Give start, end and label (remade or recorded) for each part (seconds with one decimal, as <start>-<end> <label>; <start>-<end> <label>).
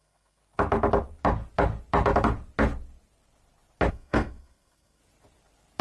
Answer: 0.0-0.4 remade; 0.4-3.9 recorded; 3.9-5.0 remade; 5.0-5.8 recorded